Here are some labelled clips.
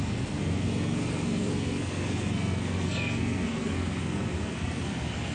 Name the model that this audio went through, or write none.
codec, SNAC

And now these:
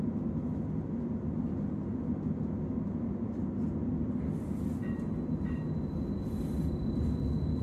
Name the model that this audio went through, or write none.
none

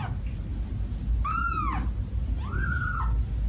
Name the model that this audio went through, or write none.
none